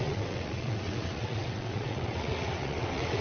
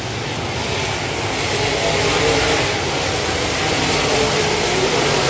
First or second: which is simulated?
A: first